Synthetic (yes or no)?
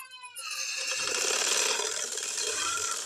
no